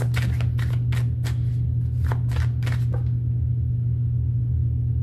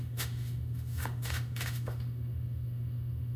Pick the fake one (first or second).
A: second